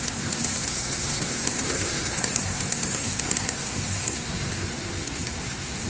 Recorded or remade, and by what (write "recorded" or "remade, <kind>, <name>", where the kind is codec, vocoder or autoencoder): remade, codec, SNAC